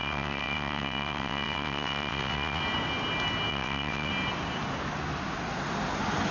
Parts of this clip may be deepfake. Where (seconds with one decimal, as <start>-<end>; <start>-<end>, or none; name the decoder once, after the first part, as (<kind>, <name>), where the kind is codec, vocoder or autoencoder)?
0.0-2.6 (vocoder, WaveNeXt); 3.5-4.1